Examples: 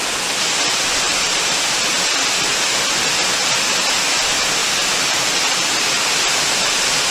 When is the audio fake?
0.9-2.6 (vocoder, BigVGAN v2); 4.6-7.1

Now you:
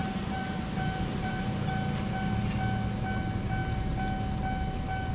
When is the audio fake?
0.0-1.5 (vocoder, BigVGAN v2)